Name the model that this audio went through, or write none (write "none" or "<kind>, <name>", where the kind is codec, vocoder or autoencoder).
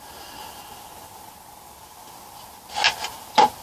none